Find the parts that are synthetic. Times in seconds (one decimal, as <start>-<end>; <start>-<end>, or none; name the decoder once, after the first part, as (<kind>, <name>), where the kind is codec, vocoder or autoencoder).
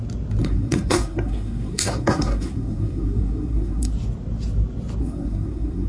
0.4-3.9 (codec, SNAC); 5.0-5.9